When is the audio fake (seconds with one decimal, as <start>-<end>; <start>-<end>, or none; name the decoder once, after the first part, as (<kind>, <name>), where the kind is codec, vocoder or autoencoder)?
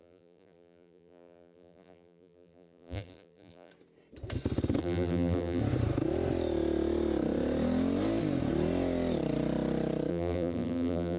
0.0-3.7 (vocoder, BigVGAN v2); 4.8-5.6; 10.1-11.2